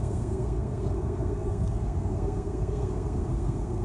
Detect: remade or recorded remade